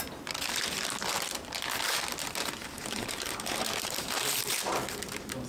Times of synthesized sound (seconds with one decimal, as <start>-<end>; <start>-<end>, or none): 2.6-4.6